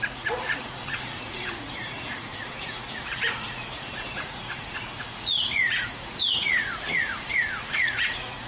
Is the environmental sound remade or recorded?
remade